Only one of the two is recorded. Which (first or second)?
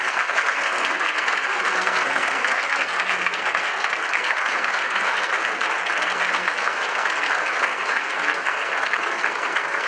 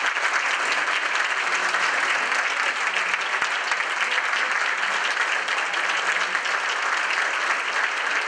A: second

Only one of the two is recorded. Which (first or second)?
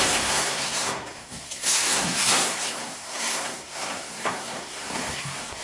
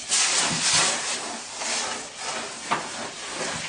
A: second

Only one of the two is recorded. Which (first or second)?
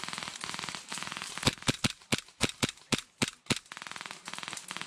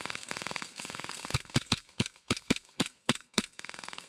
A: first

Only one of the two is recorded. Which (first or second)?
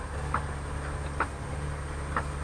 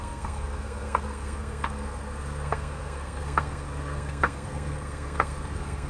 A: first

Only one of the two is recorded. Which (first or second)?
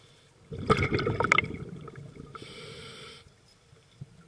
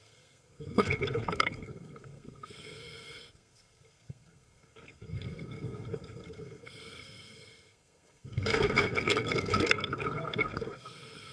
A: first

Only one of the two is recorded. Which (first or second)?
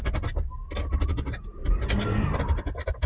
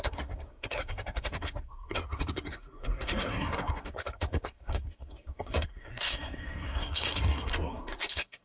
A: first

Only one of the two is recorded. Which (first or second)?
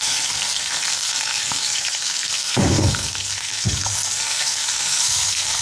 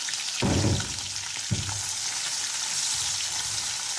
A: second